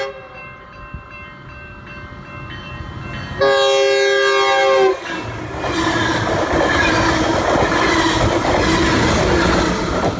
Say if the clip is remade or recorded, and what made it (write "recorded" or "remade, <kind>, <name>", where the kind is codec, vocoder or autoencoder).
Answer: recorded